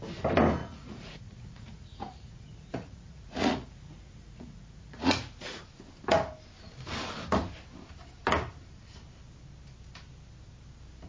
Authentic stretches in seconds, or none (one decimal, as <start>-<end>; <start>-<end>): 0.0-0.6; 5.6-11.1